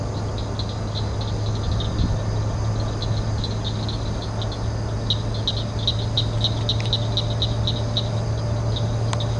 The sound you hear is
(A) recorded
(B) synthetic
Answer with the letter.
A